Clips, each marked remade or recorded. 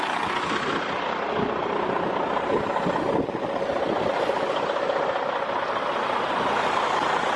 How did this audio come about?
recorded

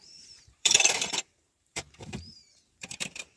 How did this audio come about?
remade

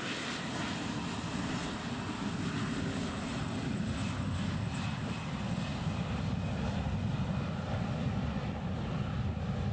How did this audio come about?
recorded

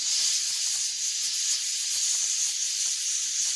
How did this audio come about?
recorded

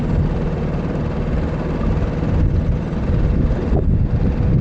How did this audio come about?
recorded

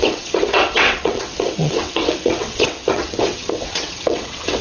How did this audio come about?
remade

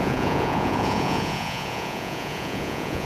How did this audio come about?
remade